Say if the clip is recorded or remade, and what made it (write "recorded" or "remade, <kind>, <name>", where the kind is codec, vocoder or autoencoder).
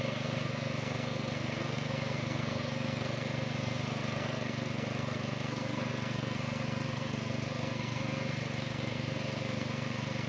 remade, codec, SNAC